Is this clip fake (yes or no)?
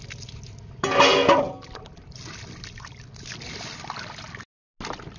no